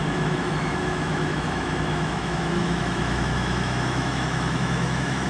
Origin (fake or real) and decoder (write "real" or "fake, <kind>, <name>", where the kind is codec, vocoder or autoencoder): fake, autoencoder, DAC-VAE